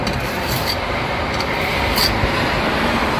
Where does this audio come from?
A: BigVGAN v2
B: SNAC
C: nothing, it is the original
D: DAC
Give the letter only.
A